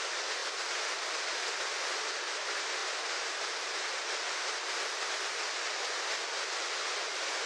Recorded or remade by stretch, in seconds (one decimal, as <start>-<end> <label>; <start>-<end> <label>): 0.0-7.5 recorded